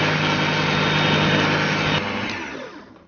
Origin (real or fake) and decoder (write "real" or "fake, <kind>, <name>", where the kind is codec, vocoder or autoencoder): real